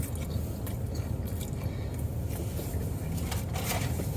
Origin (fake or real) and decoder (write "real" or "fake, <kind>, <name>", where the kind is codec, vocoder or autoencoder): real